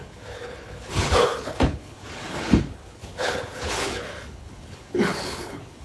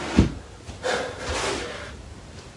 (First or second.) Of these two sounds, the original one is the second